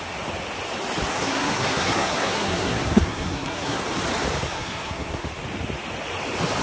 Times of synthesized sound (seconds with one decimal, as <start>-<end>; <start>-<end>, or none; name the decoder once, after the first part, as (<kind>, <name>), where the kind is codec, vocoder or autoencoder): 1.1-3.8 (codec, SNAC); 4.4-5.3